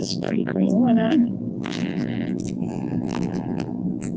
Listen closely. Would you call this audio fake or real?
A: fake